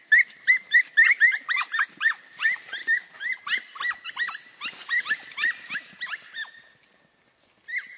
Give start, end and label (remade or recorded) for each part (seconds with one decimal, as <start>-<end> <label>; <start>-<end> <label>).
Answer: 0.0-8.0 recorded